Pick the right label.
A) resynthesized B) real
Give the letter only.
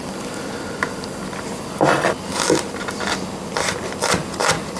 B